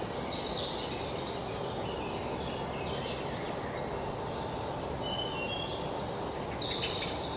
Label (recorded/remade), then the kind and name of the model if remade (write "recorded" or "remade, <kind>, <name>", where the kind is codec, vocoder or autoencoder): recorded